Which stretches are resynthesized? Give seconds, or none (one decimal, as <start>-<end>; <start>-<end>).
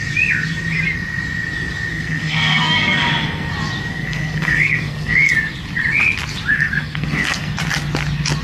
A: 1.9-3.5; 3.9-5.3; 6.5-7.6